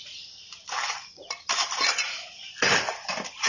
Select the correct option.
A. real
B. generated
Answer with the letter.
A